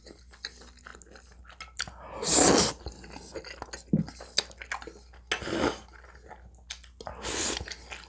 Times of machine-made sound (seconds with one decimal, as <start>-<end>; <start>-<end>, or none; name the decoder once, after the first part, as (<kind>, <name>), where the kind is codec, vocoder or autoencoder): none